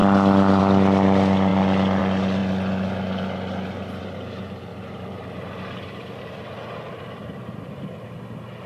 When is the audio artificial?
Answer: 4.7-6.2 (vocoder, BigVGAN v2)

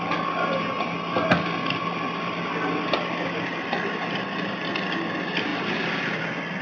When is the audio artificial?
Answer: 5.5-6.6 (vocoder, BigVGAN v2)

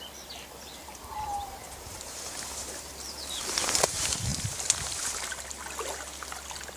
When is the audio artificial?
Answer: 0.8-2.9 (vocoder, BigVGAN v2); 4.3-5.4

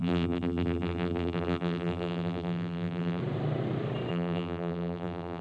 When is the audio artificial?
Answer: 0.0-3.2 (vocoder, BigVGAN v2); 4.1-5.4